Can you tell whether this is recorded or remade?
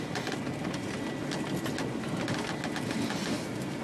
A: recorded